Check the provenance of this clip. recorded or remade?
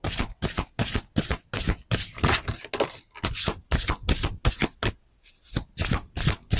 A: recorded